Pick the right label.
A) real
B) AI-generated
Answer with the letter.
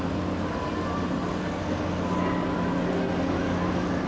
A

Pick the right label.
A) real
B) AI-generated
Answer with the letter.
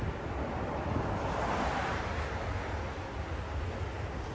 A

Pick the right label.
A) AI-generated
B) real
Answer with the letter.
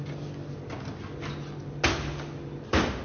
B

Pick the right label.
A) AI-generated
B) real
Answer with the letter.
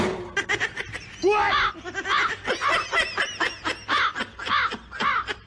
B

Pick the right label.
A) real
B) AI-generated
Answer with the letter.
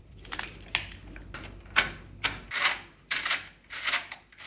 A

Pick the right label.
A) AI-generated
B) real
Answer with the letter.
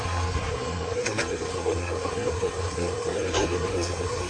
A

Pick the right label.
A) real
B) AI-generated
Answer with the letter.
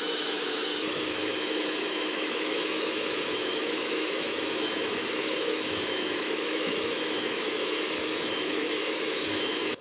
B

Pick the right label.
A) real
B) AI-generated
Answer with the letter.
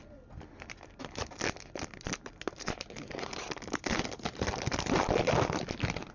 A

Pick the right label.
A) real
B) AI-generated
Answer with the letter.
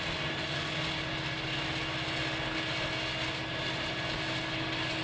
A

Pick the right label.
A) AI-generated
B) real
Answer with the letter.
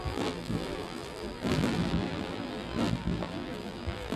A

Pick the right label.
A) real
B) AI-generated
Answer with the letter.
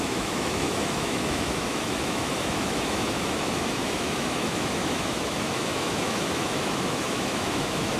B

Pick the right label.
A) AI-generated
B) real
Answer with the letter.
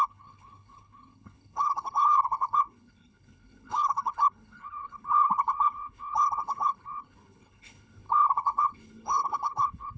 A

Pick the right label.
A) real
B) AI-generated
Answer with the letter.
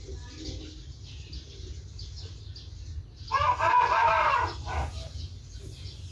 A